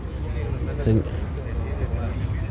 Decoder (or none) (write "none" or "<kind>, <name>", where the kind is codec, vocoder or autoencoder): none